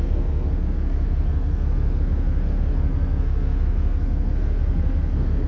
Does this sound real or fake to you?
fake